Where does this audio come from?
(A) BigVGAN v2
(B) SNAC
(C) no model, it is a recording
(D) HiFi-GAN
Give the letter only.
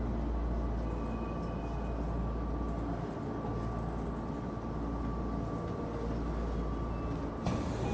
C